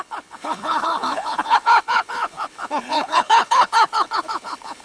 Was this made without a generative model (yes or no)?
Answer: no